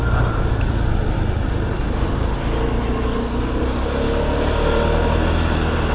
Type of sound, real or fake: real